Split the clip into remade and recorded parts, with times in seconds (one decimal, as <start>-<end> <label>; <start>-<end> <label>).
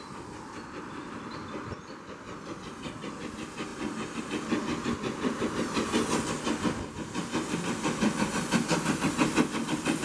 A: 0.0-10.0 recorded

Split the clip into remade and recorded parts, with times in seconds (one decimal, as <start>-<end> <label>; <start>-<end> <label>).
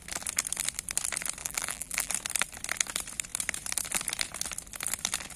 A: 0.0-1.4 recorded; 1.4-2.1 remade; 2.1-5.4 recorded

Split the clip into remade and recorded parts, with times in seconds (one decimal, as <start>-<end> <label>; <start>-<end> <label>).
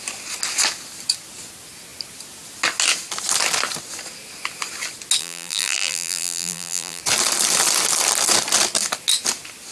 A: 0.0-5.2 recorded; 5.2-7.0 remade; 7.0-9.7 recorded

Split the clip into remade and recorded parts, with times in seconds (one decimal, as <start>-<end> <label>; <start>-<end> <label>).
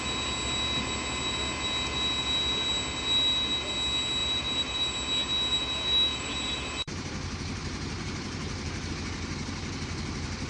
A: 0.0-4.2 recorded; 4.2-4.7 remade; 4.7-6.1 recorded; 6.1-8.9 remade; 8.9-10.5 recorded